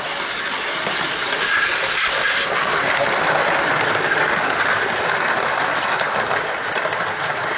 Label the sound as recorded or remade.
recorded